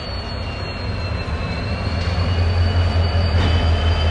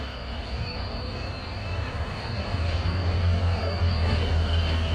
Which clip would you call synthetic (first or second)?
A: second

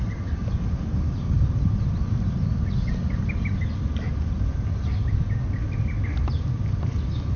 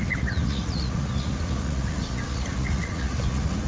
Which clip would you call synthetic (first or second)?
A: second